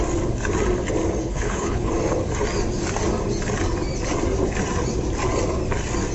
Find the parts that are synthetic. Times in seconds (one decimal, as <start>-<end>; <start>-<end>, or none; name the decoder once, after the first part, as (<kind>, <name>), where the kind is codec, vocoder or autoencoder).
1.2-1.9 (codec, HILCodec)